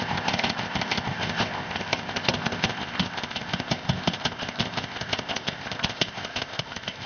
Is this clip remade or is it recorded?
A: remade